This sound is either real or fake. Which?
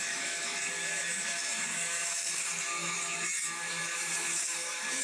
fake